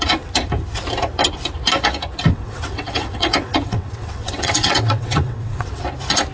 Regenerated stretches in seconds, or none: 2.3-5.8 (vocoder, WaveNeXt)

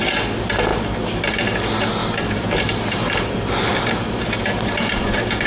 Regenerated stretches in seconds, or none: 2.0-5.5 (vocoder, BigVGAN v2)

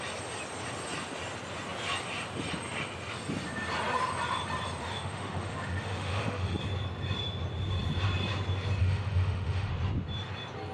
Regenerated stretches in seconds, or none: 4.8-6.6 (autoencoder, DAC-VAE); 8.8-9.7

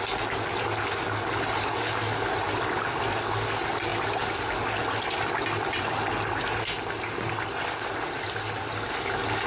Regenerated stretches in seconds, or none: none

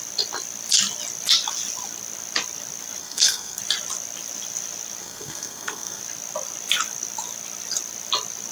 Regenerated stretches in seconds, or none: 3.0-3.6 (codec, SNAC); 5.0-6.0

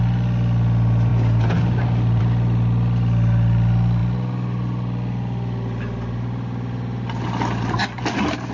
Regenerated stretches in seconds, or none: none